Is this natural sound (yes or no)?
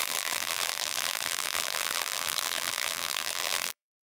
no